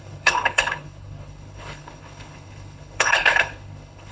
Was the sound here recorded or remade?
remade